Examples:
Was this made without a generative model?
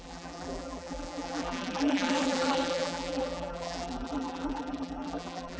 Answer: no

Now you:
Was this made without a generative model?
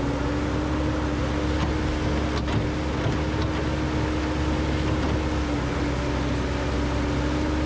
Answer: yes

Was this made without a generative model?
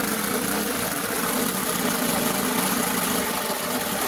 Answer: yes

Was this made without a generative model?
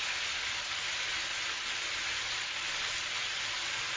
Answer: yes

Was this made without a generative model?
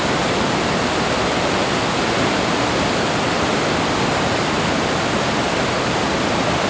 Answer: yes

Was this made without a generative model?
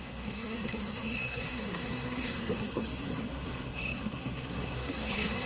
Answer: no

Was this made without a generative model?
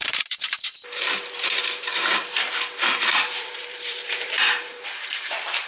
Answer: no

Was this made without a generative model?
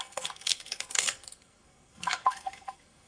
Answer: no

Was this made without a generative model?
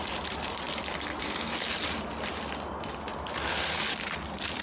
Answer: no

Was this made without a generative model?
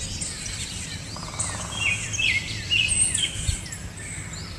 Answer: yes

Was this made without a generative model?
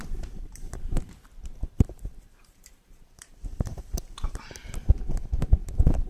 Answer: no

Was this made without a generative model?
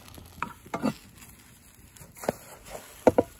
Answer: yes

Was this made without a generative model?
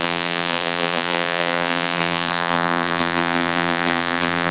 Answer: no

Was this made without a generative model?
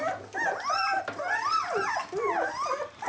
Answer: yes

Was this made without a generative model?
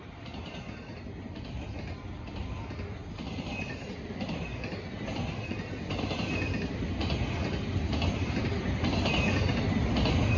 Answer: yes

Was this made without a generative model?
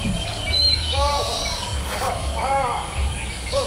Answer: no